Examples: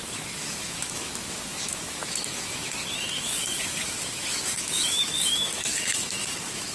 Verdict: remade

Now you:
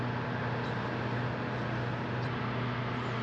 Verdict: recorded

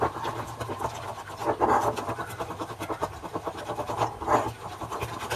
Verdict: recorded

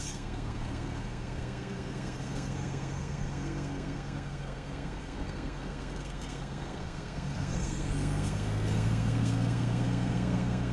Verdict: remade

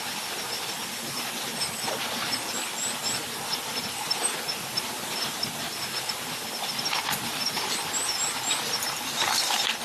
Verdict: recorded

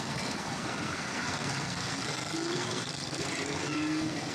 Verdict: remade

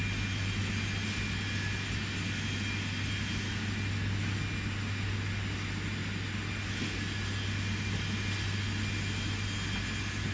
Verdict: recorded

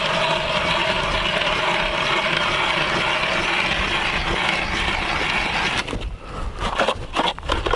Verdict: recorded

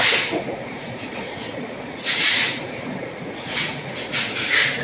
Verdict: remade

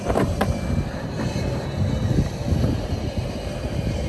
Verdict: recorded